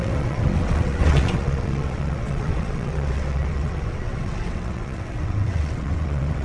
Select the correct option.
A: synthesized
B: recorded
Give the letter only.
A